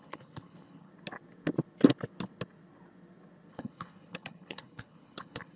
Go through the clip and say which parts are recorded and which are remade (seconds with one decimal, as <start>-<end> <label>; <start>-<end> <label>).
0.0-0.9 remade; 0.9-3.5 recorded; 3.5-5.6 remade